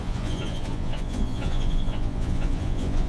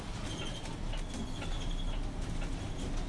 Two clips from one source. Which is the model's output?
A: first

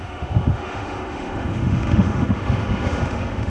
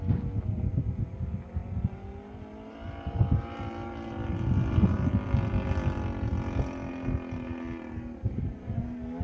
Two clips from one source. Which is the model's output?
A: first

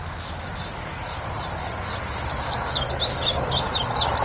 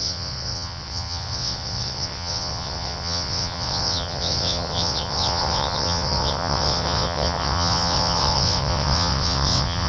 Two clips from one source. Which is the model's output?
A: second